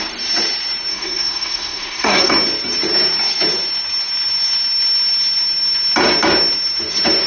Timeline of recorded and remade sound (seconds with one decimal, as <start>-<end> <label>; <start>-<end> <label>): 0.0-0.9 recorded; 0.9-2.3 remade; 2.3-7.3 recorded